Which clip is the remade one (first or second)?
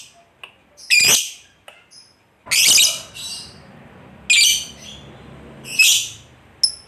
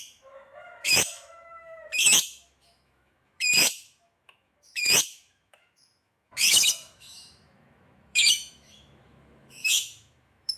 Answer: second